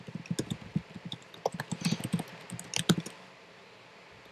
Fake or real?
real